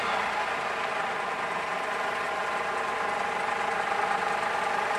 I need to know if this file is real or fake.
real